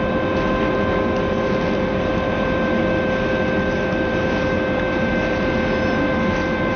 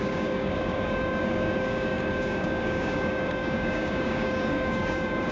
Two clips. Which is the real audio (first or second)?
first